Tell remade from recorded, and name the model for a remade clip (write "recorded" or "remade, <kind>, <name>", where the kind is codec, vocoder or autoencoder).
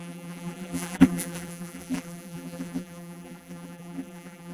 remade, vocoder, BigVGAN v2